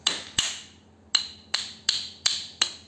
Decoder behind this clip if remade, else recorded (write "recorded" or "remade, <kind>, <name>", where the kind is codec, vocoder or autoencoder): recorded